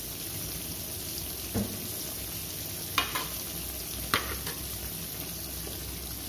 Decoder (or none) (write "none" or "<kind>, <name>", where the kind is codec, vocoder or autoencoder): none